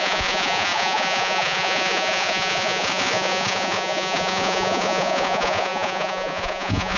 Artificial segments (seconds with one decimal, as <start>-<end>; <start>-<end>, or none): 0.0-7.0